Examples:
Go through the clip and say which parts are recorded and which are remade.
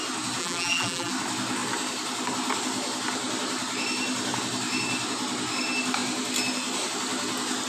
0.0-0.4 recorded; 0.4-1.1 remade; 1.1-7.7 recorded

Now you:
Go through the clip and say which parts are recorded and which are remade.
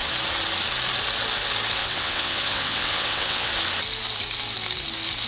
0.0-1.8 recorded; 1.8-3.5 remade; 3.5-5.3 recorded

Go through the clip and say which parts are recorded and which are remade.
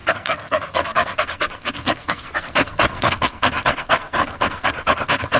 0.0-5.4 remade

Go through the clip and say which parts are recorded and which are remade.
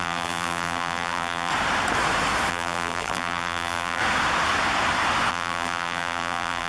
0.0-1.5 remade; 1.5-2.5 recorded; 2.5-4.0 remade; 4.0-5.3 recorded; 5.3-6.7 remade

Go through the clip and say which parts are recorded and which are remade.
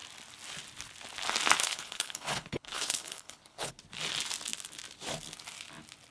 0.0-1.6 recorded; 1.6-3.7 remade; 3.7-6.1 recorded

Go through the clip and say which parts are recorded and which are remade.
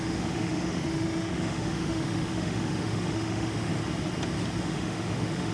0.0-3.7 remade; 3.7-4.6 recorded; 4.6-5.5 remade